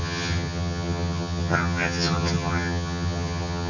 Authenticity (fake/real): fake